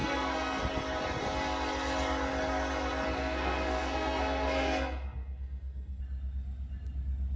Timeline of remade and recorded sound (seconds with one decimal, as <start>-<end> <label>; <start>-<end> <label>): 0.0-0.6 remade; 0.6-3.2 recorded; 3.2-6.0 remade; 6.0-7.4 recorded